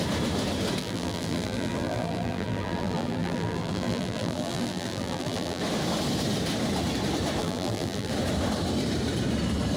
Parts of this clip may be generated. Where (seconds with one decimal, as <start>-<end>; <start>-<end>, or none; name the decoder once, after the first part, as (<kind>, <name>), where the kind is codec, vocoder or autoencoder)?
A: 0.8-5.6 (vocoder, BigVGAN v2); 7.4-8.1